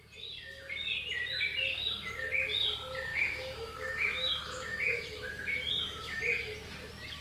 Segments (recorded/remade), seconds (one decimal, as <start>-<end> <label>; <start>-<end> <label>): 0.0-3.1 recorded; 3.1-6.2 remade; 6.2-7.2 recorded